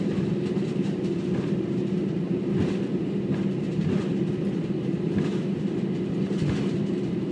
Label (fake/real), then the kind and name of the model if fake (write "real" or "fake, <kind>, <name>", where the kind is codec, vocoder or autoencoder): real